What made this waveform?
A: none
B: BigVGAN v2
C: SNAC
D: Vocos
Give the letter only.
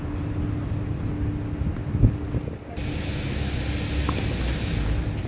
A